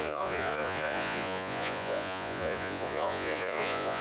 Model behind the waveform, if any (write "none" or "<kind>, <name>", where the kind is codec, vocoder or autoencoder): vocoder, Vocos